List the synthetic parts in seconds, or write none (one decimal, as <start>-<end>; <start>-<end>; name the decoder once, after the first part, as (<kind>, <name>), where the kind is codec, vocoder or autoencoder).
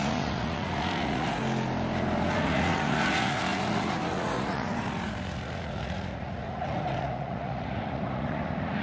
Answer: 0.0-1.4 (vocoder, Vocos); 2.3-8.8